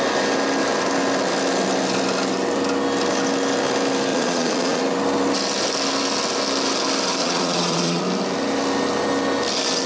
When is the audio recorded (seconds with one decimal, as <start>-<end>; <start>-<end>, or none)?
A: 0.0-4.1; 4.8-7.2; 8.0-9.9